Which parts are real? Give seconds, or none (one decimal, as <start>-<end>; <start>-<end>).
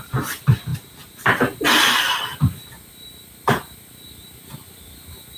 0.0-5.4